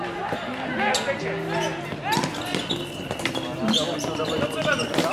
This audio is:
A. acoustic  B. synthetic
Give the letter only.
A